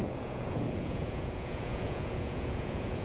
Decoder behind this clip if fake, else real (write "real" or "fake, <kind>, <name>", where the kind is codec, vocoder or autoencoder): fake, vocoder, Vocos